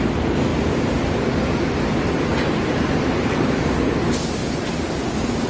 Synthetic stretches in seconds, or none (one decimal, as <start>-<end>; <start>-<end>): 0.5-3.8; 4.4-5.1